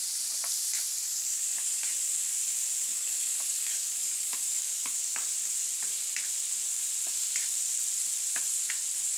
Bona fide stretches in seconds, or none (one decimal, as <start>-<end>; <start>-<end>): 0.0-1.1; 1.9-2.9; 5.0-9.2